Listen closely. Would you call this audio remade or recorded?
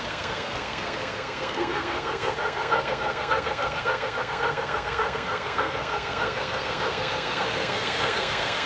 remade